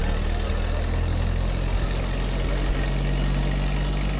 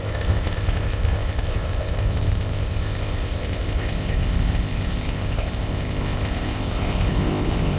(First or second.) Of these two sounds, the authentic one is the first